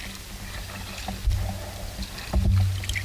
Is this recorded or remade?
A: recorded